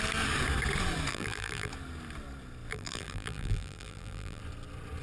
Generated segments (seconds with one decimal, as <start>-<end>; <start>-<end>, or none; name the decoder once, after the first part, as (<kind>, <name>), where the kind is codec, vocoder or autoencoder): 1.1-1.7 (vocoder, BigVGAN v2); 2.7-4.4